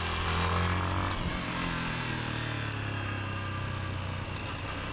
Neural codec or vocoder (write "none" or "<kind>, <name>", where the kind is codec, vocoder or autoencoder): none